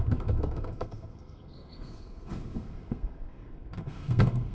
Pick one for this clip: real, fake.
fake